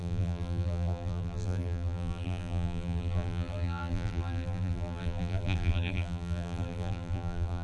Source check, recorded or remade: remade